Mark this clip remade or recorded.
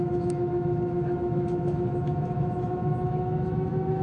remade